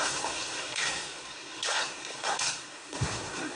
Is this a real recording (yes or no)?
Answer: no